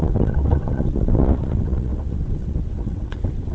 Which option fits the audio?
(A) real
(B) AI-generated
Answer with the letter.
B